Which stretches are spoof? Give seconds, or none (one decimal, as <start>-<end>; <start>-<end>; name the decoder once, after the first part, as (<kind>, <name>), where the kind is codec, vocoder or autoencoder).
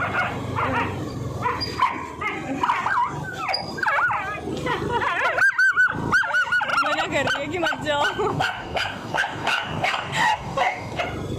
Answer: 8.3-11.0 (codec, DAC)